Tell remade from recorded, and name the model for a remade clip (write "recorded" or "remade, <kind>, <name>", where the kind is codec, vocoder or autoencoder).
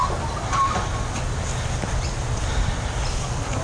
recorded